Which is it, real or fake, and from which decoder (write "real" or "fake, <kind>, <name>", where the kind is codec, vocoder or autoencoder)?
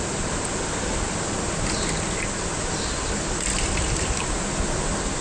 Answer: real